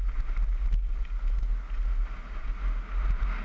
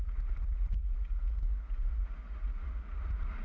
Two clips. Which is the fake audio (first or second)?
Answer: second